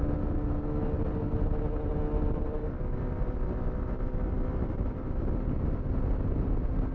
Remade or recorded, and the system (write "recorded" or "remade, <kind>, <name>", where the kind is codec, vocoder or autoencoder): recorded